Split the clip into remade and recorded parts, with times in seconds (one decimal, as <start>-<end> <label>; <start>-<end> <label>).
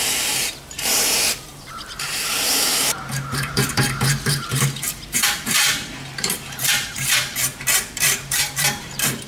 0.0-9.3 remade